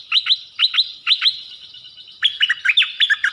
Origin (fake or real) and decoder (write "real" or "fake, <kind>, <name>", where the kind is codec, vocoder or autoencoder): real